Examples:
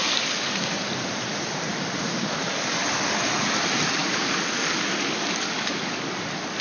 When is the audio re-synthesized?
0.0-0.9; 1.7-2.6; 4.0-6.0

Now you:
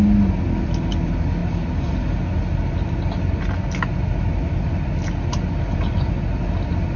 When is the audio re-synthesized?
none

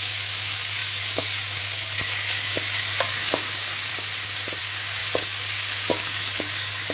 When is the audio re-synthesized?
0.0-3.9; 4.6-6.9

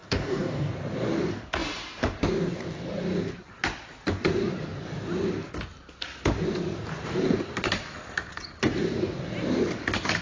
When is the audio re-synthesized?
0.0-0.7